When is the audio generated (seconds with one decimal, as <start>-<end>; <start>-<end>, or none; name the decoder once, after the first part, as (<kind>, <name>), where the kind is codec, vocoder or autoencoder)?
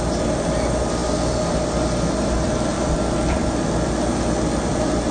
none